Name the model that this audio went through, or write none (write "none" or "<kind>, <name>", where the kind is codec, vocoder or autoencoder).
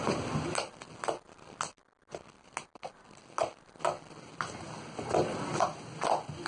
none